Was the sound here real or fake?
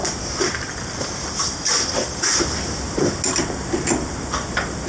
real